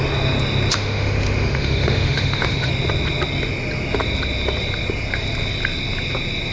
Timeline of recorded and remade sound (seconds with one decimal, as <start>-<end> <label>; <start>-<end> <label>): 0.0-0.7 recorded; 0.7-2.7 remade; 2.7-6.5 recorded